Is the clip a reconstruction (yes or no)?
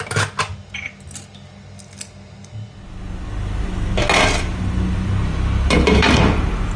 no